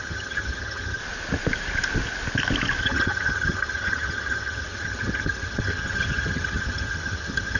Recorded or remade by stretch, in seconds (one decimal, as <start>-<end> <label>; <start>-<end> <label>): 0.0-1.0 remade; 1.0-2.8 recorded; 2.8-7.6 remade